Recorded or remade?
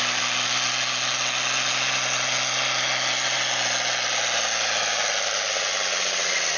recorded